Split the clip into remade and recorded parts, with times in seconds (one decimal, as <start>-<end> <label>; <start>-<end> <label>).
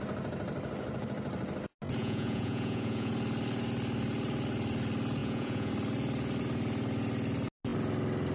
0.0-2.0 recorded; 2.0-3.1 remade; 3.1-5.2 recorded; 5.2-5.7 remade; 5.7-8.3 recorded